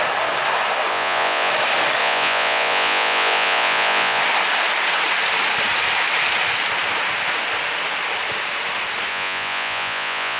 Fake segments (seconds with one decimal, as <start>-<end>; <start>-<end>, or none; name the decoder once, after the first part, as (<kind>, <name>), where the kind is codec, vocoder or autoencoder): 0.9-1.5 (vocoder, Vocos); 2.0-4.2; 9.1-10.4